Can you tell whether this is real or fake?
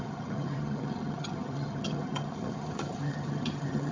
fake